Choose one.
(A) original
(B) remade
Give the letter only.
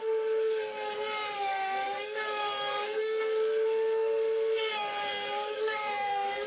B